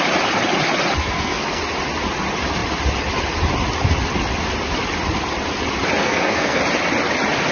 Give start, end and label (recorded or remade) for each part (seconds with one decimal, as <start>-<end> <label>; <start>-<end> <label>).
0.0-1.0 recorded; 1.0-1.6 remade; 1.6-6.0 recorded; 6.0-6.6 remade; 6.6-7.5 recorded